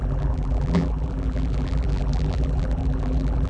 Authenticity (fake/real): fake